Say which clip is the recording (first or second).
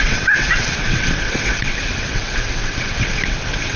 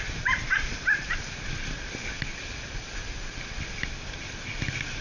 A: second